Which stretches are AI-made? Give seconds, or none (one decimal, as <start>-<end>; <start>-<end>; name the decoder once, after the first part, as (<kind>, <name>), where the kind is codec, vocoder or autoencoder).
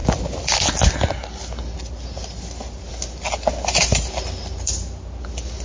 none